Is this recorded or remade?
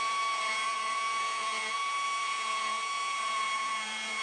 remade